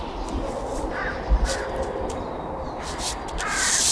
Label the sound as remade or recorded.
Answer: recorded